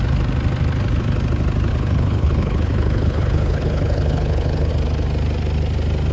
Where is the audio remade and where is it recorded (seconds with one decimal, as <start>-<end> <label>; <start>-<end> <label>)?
0.0-1.7 recorded; 1.7-4.7 remade; 4.7-6.1 recorded